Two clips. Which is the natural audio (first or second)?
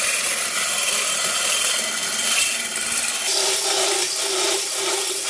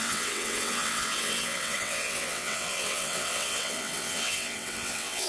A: first